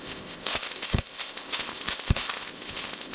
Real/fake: fake